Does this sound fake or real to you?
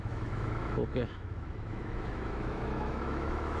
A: fake